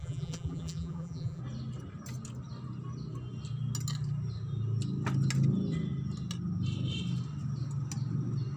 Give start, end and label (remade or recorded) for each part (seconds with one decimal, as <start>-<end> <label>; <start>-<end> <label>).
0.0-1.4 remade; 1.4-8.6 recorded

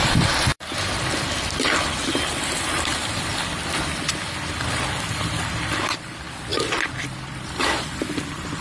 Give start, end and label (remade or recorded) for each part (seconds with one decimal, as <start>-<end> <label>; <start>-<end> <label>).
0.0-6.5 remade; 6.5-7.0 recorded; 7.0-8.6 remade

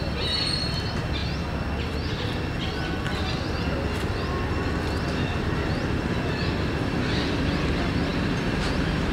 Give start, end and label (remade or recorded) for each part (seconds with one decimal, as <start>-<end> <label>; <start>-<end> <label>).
0.0-8.1 recorded; 8.1-9.1 remade